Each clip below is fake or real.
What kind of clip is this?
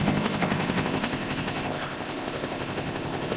fake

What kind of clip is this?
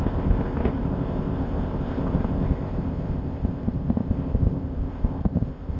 fake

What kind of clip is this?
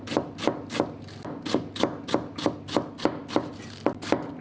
real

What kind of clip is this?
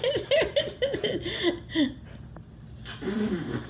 real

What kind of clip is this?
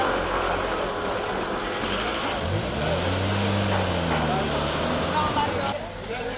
real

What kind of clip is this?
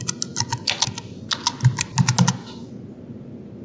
real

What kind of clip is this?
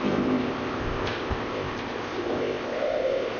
fake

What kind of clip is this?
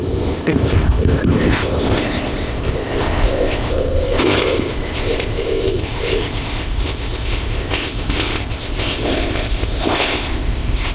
fake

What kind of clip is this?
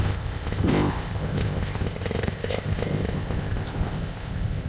fake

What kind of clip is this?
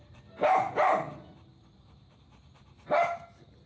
real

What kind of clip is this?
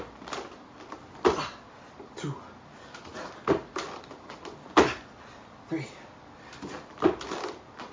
real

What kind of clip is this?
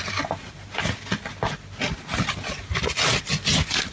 real